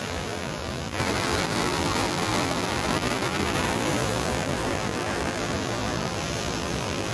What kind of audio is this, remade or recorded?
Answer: remade